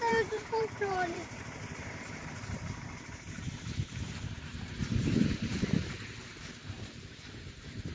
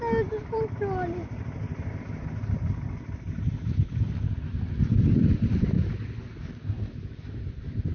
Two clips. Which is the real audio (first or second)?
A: second